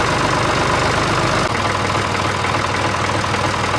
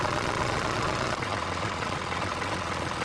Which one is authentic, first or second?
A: first